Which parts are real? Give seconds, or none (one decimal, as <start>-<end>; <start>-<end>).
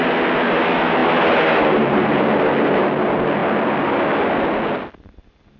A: 0.0-1.0; 2.2-5.6